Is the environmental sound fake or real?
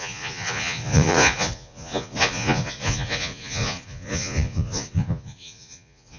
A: fake